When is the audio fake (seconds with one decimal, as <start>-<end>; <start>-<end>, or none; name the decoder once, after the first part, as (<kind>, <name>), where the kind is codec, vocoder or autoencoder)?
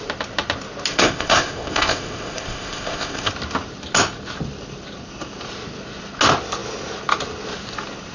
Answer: 0.9-3.3 (codec, ZipCodec)